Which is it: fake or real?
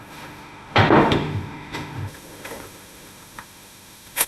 fake